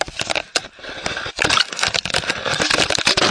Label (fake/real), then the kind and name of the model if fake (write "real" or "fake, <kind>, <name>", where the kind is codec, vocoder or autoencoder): real